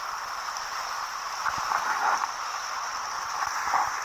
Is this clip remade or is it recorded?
recorded